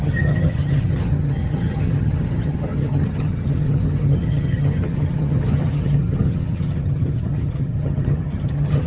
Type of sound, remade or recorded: remade